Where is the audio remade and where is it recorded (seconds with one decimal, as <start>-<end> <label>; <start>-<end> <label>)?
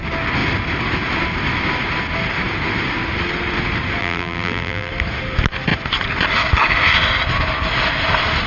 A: 0.0-4.0 recorded; 4.0-4.9 remade; 4.9-8.5 recorded